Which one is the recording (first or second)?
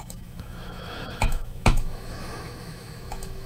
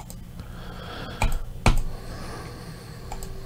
second